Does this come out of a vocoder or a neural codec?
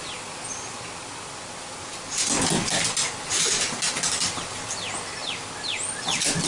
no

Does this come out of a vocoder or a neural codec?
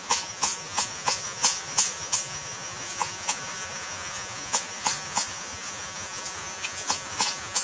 yes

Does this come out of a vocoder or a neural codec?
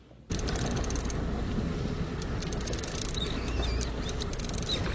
no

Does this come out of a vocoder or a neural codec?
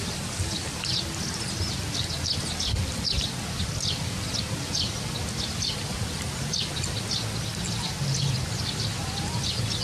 no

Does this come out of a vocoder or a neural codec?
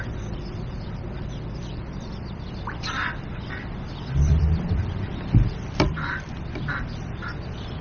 yes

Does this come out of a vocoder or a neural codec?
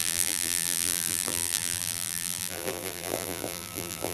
yes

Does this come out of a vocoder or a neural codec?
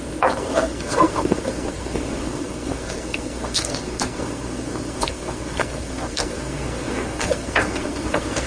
yes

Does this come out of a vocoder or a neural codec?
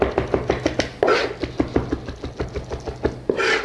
no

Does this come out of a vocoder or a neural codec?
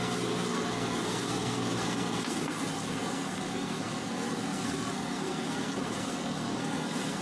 yes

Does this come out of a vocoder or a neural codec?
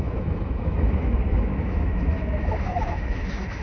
yes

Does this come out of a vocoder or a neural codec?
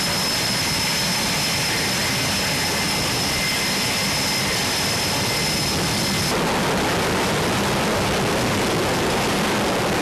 no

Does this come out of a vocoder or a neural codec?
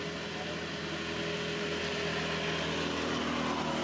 no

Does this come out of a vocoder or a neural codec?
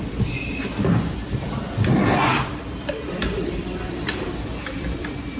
yes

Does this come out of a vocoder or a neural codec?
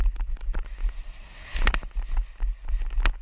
no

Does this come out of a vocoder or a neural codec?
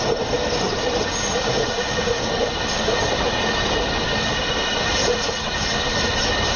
no